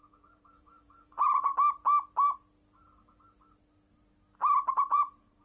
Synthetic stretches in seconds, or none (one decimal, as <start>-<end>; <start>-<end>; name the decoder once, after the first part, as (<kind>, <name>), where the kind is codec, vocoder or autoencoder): 0.0-1.5 (vocoder, Vocos); 4.7-5.4